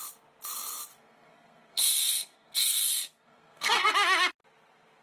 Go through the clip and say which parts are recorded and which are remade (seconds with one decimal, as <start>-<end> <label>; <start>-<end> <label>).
0.0-0.9 recorded; 0.9-3.9 remade; 3.9-5.0 recorded